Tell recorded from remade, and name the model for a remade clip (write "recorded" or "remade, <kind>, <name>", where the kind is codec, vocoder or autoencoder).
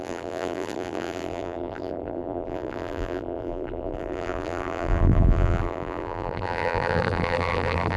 remade, vocoder, BigVGAN v2